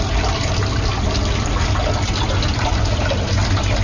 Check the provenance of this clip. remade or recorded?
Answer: recorded